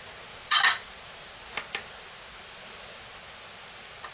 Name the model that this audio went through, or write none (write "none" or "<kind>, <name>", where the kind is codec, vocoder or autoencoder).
none